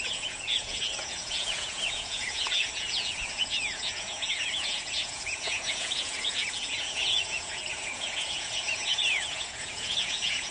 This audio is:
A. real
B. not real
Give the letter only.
B